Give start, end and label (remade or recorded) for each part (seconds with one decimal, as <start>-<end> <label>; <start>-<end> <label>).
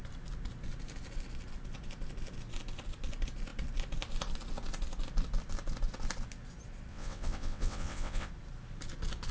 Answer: 0.0-6.9 recorded; 6.9-8.3 remade; 8.3-9.3 recorded